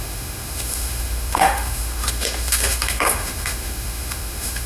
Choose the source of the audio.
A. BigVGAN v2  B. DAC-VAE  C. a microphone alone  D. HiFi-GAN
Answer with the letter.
B